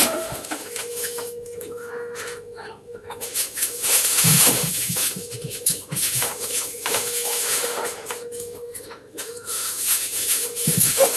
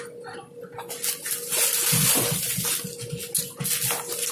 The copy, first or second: first